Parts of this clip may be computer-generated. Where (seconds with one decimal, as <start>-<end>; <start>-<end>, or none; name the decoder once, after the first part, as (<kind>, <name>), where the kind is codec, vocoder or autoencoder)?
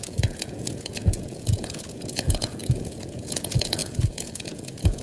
0.0-5.0 (vocoder, Vocos)